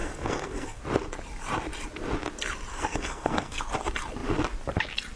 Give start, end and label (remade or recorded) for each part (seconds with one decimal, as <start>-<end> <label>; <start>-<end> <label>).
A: 0.0-0.8 remade; 0.8-2.7 recorded; 2.7-3.6 remade; 3.6-5.2 recorded